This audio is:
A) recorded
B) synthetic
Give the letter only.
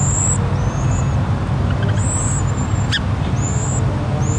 A